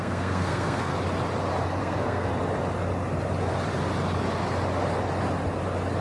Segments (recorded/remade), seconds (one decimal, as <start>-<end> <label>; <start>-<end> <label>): 0.0-0.9 remade; 0.9-1.8 recorded; 1.8-2.3 remade; 2.3-6.0 recorded